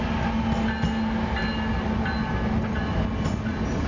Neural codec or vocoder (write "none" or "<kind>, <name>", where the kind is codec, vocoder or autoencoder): none